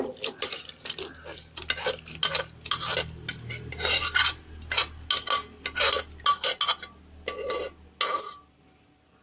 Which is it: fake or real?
real